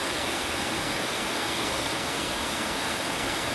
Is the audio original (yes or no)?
no